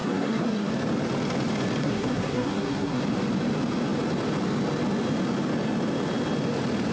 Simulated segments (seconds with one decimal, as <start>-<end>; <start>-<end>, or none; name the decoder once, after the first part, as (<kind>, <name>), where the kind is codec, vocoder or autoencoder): 0.0-0.7 (codec, SNAC); 1.8-3.0